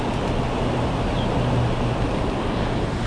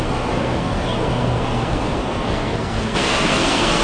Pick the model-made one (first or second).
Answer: second